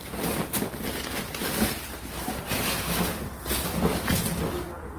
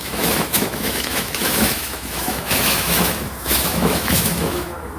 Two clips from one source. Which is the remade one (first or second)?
second